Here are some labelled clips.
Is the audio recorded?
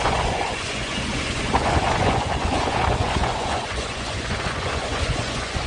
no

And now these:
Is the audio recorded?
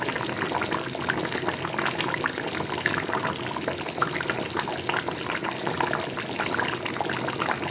yes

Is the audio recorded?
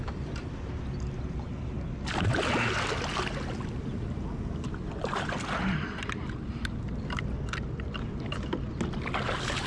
yes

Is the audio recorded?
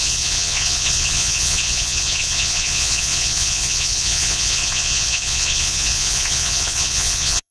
no